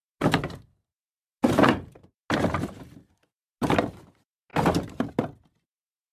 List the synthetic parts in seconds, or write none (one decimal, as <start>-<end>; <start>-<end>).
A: 4.5-5.1